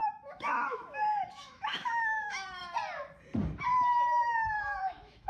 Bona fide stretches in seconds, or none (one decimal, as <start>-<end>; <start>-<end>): 2.6-3.7